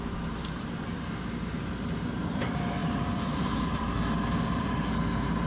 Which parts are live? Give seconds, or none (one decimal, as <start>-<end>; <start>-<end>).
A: 0.0-2.8; 4.7-5.5